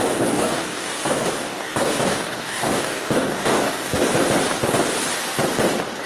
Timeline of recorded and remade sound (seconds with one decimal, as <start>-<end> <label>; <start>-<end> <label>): 0.0-4.0 remade; 4.0-6.1 recorded